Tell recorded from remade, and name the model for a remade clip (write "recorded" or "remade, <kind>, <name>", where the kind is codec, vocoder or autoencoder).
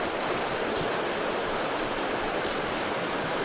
remade, vocoder, BigVGAN v2